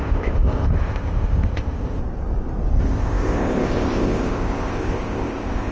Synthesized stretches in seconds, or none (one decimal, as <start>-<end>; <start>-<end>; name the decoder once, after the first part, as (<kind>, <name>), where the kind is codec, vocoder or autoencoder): 0.0-2.0 (codec, ZipCodec); 2.8-5.7